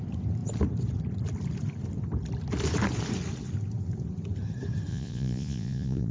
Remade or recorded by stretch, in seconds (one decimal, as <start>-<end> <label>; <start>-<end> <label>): 0.0-4.9 recorded; 4.9-6.1 remade